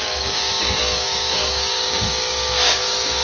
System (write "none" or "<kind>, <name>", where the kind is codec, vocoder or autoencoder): codec, DAC